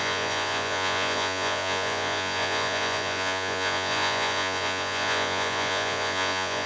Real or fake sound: fake